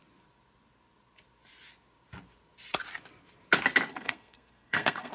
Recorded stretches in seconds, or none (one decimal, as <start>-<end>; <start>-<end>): 0.0-3.9